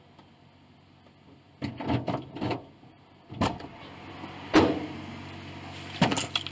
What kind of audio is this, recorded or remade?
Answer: recorded